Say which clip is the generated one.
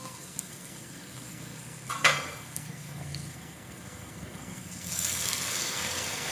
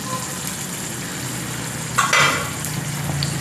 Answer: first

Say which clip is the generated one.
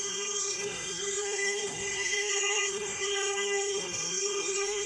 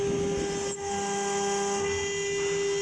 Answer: first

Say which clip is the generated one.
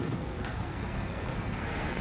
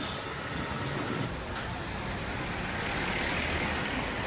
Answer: first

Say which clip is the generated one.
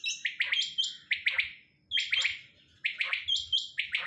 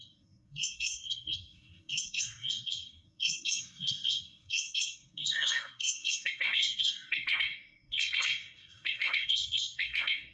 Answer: second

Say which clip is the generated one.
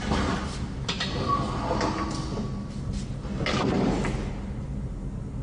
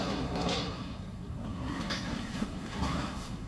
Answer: second